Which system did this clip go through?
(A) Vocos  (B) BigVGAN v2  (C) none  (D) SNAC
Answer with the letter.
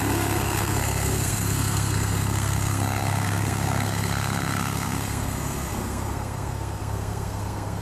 D